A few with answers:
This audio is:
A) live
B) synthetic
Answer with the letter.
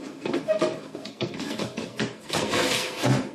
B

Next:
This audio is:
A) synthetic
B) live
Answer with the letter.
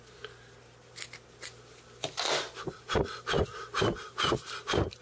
B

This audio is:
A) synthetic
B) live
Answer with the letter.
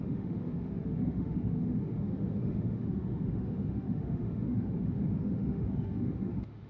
A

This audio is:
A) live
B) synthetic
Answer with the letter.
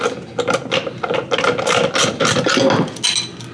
A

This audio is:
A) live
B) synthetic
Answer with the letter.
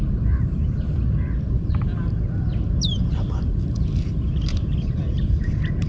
A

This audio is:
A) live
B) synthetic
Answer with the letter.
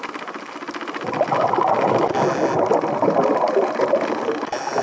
A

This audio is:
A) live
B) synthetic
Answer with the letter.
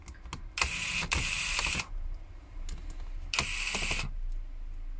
A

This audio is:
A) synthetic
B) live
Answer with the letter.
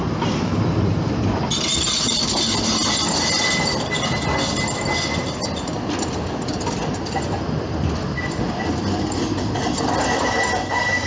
B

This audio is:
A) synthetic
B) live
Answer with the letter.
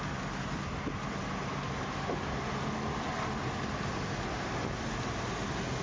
B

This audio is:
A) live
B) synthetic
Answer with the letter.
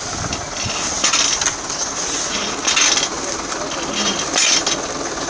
A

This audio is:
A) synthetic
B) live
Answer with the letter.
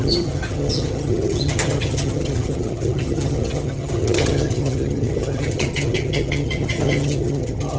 A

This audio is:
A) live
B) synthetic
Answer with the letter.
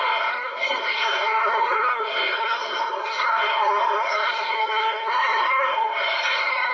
B